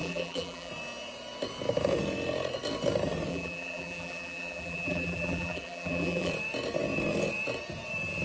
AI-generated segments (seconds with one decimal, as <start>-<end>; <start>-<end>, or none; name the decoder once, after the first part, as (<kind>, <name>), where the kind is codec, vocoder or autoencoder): 0.0-0.7 (vocoder, BigVGAN v2); 3.3-6.3

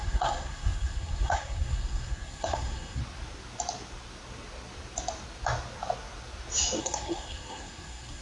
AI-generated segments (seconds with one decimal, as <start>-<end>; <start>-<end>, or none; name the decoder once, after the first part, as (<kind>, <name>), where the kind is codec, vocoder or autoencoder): 0.0-3.0 (codec, SNAC); 6.8-8.2

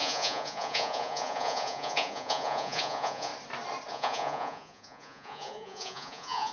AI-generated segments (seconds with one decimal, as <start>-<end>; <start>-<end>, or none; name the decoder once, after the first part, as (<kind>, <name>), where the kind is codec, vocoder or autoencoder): 0.0-3.3 (vocoder, Vocos); 3.9-6.5